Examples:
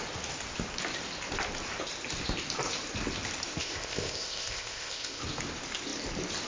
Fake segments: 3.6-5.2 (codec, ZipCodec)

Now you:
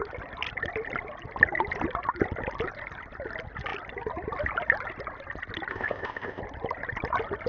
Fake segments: 5.7-6.4 (codec, ZipCodec)

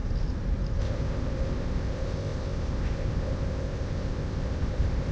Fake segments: 0.8-5.1 (codec, ZipCodec)

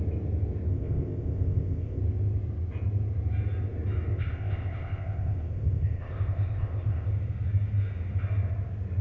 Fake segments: 0.7-2.0 (codec, ZipCodec); 4.1-7.1

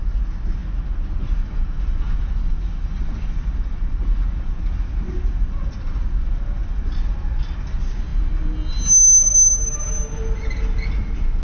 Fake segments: none